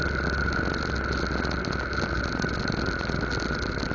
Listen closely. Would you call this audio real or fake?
real